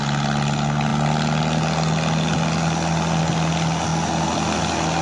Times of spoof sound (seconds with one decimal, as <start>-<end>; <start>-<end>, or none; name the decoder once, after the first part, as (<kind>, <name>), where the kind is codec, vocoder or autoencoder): none